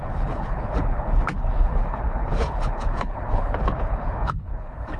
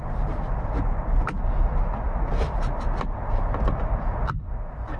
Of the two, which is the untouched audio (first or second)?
second